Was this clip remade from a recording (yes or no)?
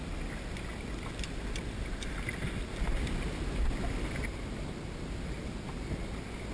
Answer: no